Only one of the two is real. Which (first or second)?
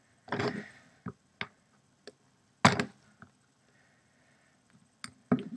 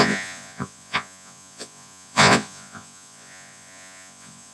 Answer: first